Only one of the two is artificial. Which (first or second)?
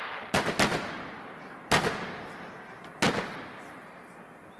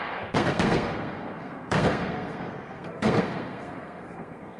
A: second